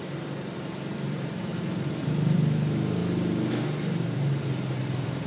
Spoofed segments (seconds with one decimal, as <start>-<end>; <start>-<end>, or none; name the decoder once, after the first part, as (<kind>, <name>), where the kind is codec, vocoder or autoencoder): 0.0-1.5 (vocoder, BigVGAN v2); 2.1-3.0; 4.8-5.3